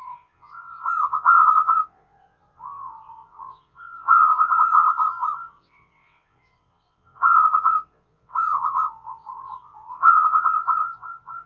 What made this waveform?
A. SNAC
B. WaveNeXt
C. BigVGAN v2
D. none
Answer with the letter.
B